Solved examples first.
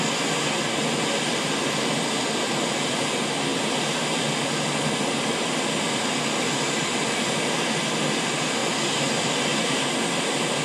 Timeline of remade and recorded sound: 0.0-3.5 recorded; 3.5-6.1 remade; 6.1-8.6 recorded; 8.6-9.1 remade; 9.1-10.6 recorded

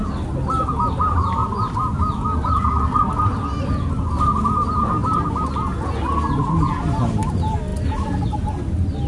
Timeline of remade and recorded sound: 0.0-1.4 recorded; 1.4-2.5 remade; 2.5-7.7 recorded; 7.7-8.5 remade; 8.5-9.1 recorded

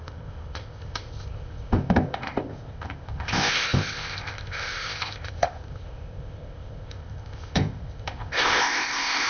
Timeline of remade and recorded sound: 0.0-9.3 remade

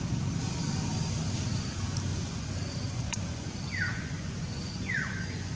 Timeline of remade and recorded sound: 0.0-2.1 recorded; 2.1-5.6 remade